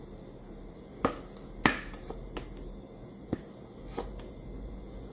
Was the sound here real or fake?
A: real